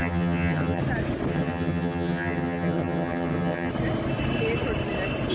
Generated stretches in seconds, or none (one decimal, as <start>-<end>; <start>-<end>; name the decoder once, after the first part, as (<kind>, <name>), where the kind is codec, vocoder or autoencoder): 0.0-0.8 (vocoder, HiFi-GAN); 1.3-3.7